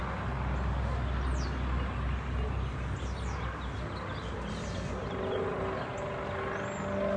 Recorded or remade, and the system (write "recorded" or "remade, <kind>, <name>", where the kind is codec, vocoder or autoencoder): recorded